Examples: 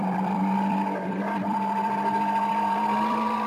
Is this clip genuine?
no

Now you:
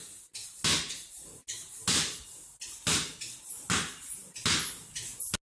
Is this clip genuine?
yes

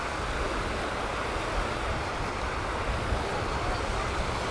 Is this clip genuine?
yes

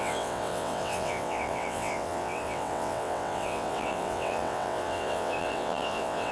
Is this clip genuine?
no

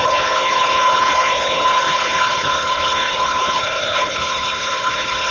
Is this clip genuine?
no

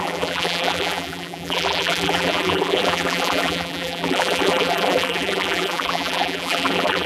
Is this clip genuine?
no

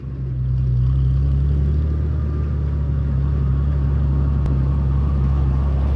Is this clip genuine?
yes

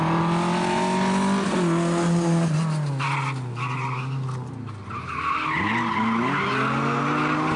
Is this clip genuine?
yes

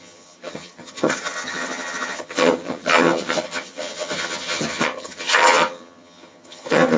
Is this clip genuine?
no